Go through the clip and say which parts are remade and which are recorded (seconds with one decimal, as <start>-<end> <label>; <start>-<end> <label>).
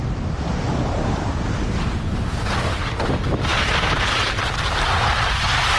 0.0-5.8 recorded